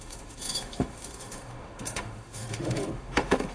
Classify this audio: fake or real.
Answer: fake